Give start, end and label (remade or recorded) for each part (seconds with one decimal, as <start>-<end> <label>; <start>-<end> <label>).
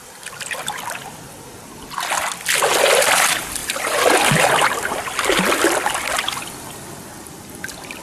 0.0-1.0 remade; 1.0-3.6 recorded; 3.6-4.9 remade; 4.9-8.0 recorded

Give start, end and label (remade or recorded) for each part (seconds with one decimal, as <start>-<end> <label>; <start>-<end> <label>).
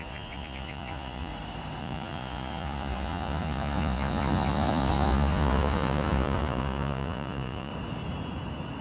0.0-1.3 remade; 1.3-1.8 recorded; 1.8-7.7 remade; 7.7-8.8 recorded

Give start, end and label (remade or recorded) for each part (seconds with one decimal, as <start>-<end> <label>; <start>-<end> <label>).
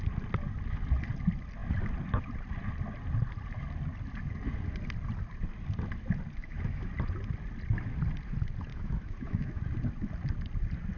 0.0-6.4 recorded; 6.4-6.9 remade; 6.9-8.7 recorded; 8.7-9.6 remade; 9.6-11.0 recorded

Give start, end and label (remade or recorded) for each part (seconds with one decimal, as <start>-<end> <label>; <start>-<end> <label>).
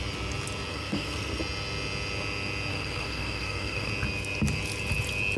0.0-0.7 recorded; 0.7-1.4 remade; 1.4-2.7 recorded; 2.7-3.9 remade; 3.9-5.4 recorded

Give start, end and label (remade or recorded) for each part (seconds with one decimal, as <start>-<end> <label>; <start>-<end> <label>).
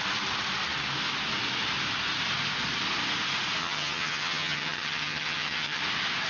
0.0-3.6 recorded; 3.6-5.8 remade; 5.8-6.3 recorded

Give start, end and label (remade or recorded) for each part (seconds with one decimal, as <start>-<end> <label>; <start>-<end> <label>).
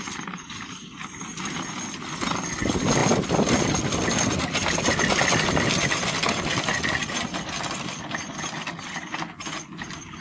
0.0-10.2 recorded